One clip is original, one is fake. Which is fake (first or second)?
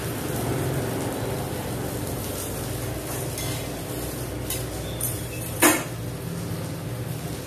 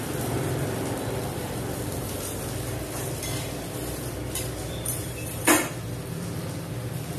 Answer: second